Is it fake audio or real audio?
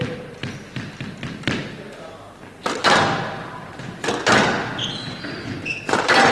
real